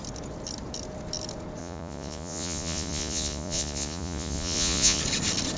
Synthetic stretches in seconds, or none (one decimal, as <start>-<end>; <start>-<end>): 1.6-5.0